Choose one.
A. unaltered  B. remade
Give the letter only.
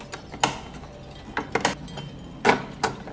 A